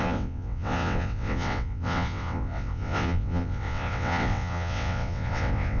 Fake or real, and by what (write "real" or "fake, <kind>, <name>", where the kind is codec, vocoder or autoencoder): fake, vocoder, WaveNeXt